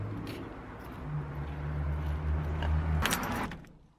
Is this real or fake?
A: real